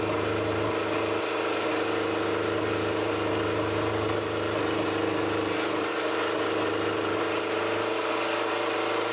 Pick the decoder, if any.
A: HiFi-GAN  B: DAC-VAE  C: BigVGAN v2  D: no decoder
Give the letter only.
C